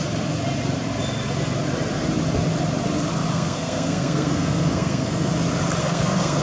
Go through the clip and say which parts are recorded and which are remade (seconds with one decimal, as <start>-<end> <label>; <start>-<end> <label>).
0.0-3.3 recorded; 3.3-5.3 remade; 5.3-5.8 recorded; 5.8-6.4 remade